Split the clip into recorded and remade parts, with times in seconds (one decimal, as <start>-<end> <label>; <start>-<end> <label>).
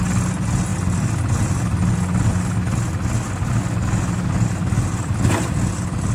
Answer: 0.0-6.1 recorded